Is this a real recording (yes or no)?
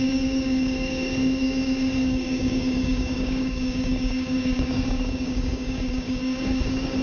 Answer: no